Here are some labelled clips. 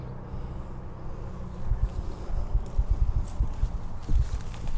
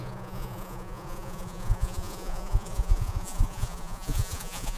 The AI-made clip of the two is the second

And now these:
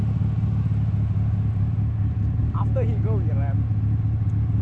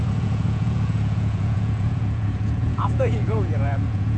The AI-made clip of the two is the second